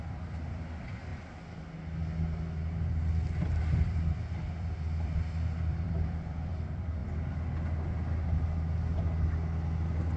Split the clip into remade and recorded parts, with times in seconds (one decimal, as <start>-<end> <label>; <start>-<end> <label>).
0.0-1.1 remade; 1.1-3.5 recorded; 3.5-7.0 remade; 7.0-10.2 recorded